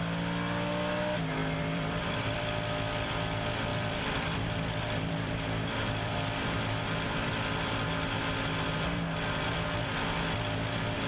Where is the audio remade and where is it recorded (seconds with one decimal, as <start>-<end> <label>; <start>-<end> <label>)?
0.0-1.4 recorded; 1.4-2.4 remade; 2.4-3.7 recorded; 3.7-6.8 remade; 6.8-11.1 recorded